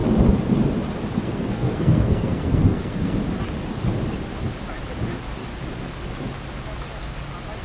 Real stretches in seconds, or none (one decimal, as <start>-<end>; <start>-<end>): 0.0-1.2; 3.2-7.6